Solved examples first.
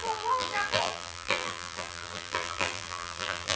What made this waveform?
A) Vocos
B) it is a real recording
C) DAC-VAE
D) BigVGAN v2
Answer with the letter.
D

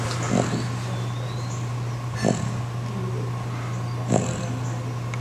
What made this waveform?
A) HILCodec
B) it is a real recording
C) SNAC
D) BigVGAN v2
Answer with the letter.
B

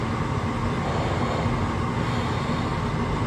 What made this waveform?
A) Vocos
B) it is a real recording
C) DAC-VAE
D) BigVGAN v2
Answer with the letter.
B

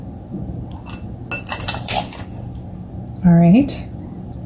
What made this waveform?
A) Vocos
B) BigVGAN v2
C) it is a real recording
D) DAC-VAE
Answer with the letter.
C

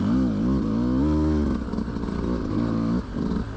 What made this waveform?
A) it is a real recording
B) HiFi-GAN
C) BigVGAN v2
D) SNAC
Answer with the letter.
A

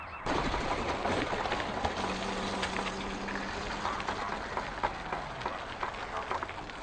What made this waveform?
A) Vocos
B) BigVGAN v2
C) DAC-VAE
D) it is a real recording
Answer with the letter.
D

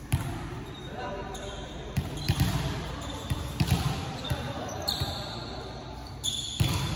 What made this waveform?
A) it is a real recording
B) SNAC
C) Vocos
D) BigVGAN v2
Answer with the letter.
D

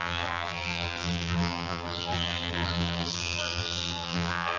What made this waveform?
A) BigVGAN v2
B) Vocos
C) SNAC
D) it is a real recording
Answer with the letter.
A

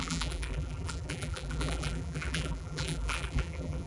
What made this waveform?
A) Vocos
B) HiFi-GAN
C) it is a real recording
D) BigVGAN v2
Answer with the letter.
D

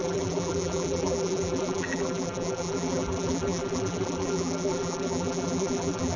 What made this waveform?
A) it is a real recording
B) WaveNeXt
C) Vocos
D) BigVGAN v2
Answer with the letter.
D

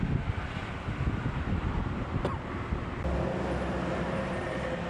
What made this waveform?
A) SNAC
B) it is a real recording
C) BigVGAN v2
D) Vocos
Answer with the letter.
B